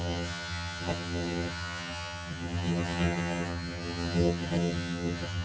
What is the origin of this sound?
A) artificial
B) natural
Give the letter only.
A